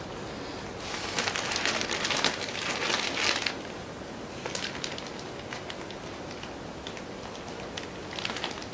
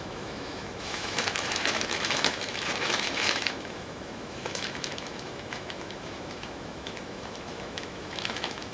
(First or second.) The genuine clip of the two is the first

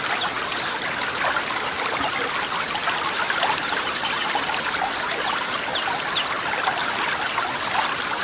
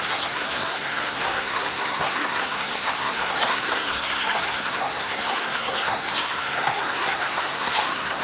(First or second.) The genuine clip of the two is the first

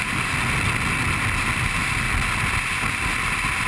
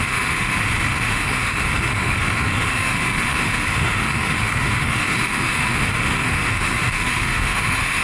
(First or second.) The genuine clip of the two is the first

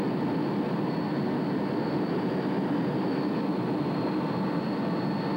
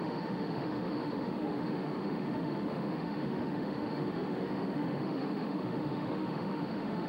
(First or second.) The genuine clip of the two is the first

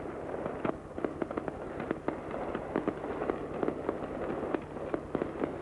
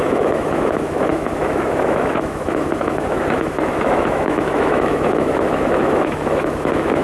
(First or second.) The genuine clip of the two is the first